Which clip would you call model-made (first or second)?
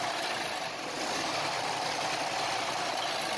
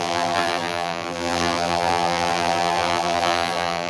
second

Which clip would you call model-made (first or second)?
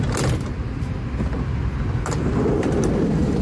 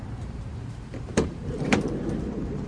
second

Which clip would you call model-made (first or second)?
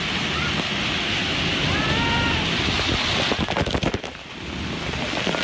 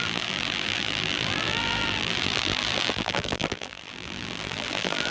second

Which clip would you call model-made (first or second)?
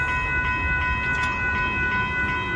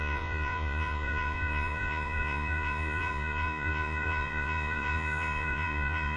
second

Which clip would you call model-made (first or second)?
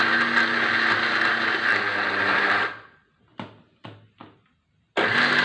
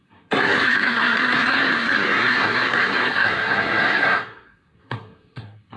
second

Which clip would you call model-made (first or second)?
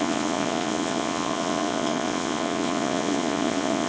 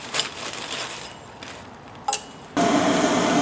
first